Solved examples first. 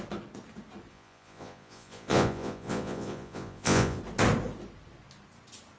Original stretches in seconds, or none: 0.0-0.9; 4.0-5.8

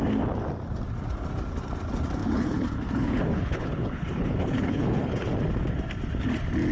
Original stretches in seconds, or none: 0.0-2.2; 5.3-6.7

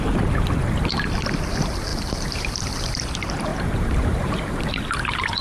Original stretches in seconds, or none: 0.0-1.9; 2.5-3.5; 4.7-5.4

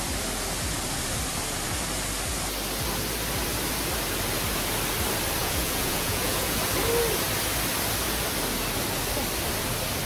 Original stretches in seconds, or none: 0.0-5.4; 6.6-10.1

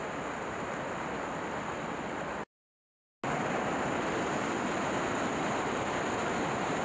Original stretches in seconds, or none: 0.0-6.8

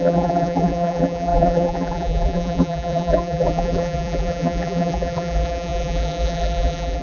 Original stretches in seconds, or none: none

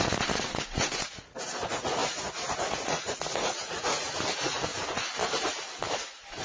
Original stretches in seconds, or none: 4.7-6.4

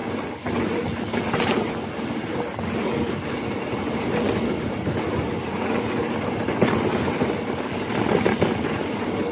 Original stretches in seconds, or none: 0.0-9.3